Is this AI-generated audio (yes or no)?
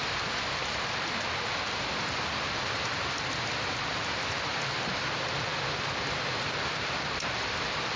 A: yes